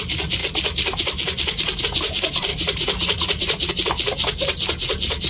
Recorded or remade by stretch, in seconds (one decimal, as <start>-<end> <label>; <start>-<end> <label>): 0.0-2.5 recorded; 2.5-3.7 remade; 3.7-5.3 recorded